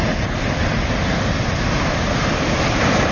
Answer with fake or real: real